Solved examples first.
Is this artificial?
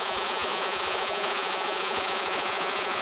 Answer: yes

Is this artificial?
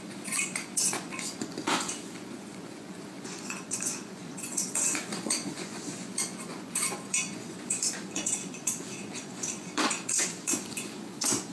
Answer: yes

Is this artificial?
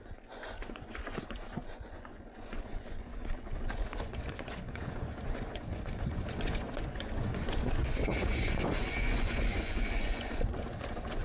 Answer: yes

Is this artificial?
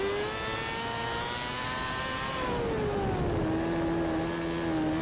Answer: no